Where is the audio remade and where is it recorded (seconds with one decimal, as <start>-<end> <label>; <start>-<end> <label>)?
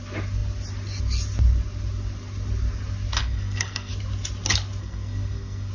0.0-3.2 recorded; 3.2-3.9 remade; 3.9-4.8 recorded; 4.8-5.7 remade